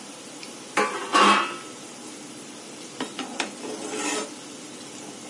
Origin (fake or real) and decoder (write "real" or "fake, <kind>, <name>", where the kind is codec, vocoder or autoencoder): real